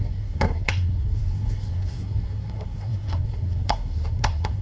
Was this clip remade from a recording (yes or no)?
yes